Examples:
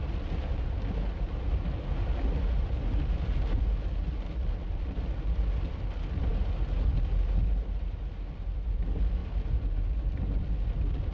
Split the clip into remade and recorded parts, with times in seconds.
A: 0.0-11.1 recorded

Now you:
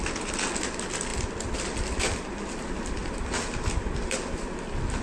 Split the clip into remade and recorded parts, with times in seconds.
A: 0.0-5.0 recorded